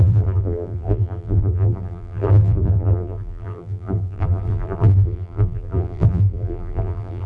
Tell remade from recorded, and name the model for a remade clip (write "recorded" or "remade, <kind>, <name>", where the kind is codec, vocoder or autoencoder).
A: remade, vocoder, BigVGAN v2